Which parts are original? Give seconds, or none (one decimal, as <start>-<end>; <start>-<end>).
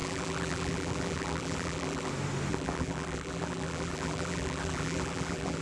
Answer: 2.1-2.5